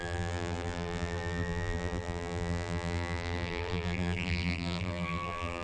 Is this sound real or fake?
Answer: fake